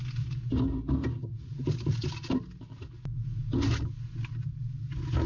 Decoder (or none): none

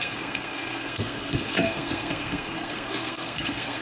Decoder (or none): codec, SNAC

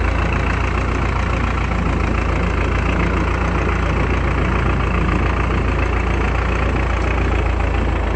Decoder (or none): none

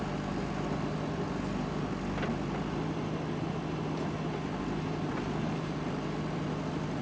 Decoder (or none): none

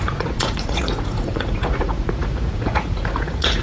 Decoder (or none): vocoder, Vocos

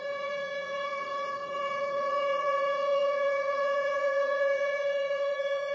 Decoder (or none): vocoder, Vocos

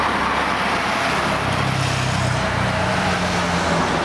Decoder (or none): none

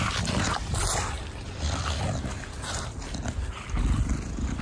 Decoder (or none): none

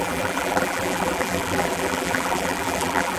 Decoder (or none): vocoder, BigVGAN v2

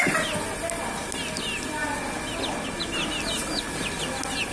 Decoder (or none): none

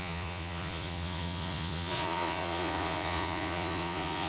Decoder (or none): vocoder, Vocos